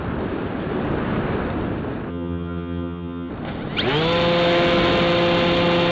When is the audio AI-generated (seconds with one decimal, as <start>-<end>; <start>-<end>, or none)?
2.1-3.3